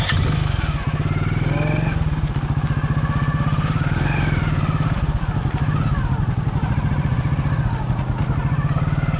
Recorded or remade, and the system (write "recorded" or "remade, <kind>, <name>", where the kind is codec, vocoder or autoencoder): recorded